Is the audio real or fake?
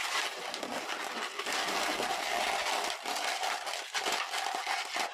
fake